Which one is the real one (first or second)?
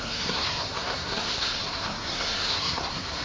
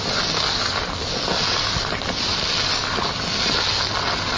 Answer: second